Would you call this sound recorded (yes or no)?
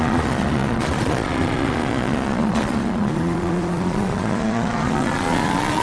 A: no